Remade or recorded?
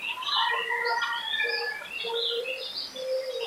recorded